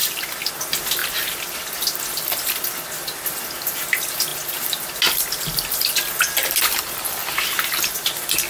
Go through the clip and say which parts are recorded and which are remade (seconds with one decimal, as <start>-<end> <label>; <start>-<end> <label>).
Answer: 0.0-0.5 remade; 0.5-8.5 recorded